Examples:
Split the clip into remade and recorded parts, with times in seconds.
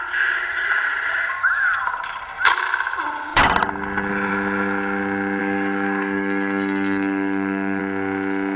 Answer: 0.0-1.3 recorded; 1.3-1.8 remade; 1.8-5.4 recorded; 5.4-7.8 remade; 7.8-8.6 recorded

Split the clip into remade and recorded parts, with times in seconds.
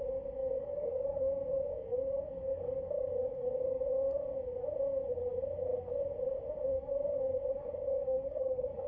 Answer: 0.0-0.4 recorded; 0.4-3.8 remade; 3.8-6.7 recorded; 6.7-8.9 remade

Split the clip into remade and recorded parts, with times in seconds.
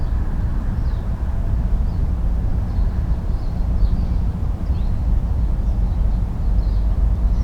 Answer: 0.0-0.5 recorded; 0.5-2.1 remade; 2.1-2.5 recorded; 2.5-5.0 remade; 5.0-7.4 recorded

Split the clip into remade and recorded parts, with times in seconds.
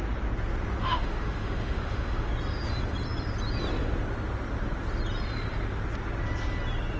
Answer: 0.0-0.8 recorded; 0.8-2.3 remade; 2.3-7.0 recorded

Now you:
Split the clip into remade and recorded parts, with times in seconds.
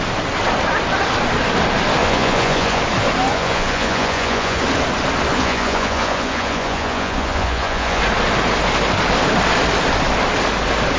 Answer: 0.0-2.0 recorded; 2.0-2.8 remade; 2.8-3.3 recorded; 3.3-4.6 remade; 4.6-5.3 recorded; 5.3-8.0 remade; 8.0-11.0 recorded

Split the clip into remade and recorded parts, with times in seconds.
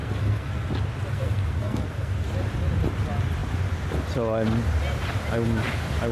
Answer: 0.0-0.7 remade; 0.7-1.1 recorded; 1.1-2.3 remade; 2.3-6.1 recorded